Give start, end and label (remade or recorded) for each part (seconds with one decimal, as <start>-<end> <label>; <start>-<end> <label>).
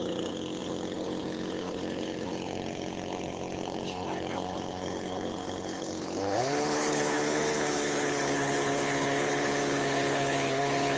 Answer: 0.0-11.0 remade